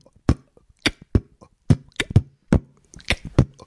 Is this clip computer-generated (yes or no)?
no